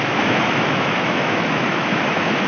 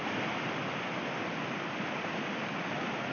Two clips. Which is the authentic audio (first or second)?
second